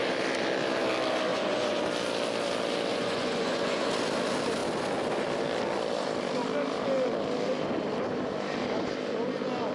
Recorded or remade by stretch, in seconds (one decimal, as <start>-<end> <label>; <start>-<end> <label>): 0.0-1.3 recorded; 1.3-1.8 remade; 1.8-2.9 recorded; 2.9-3.9 remade; 3.9-9.7 recorded